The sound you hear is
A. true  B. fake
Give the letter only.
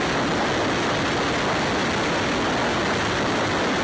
A